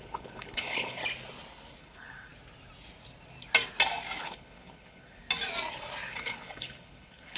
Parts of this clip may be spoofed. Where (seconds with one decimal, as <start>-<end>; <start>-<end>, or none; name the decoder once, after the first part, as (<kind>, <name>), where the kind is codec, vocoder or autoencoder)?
0.0-1.0 (codec, HILCodec); 1.8-2.3; 4.2-5.2; 6.2-7.4